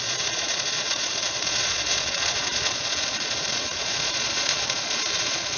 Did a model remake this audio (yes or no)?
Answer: yes